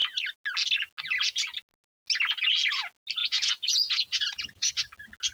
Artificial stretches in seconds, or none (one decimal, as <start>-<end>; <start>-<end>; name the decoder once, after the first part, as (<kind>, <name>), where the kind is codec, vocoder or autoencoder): 3.2-4.7 (vocoder, Vocos)